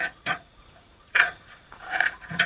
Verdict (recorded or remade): remade